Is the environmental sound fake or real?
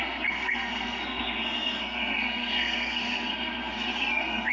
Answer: fake